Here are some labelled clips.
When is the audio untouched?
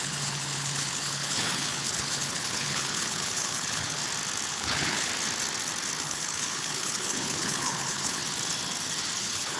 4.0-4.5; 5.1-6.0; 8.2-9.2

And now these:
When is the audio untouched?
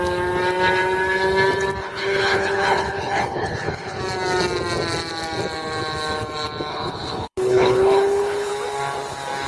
0.0-1.8; 4.0-6.7; 8.5-9.5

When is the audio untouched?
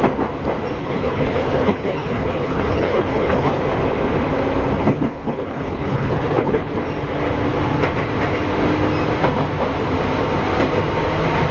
0.0-0.8; 3.6-4.8; 6.7-11.5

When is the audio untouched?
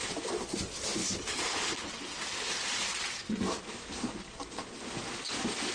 0.0-1.0; 1.9-5.7